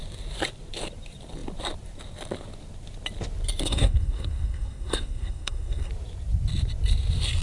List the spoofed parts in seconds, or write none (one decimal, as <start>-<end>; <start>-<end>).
3.6-5.9